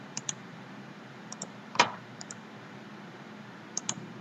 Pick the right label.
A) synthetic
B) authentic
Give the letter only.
A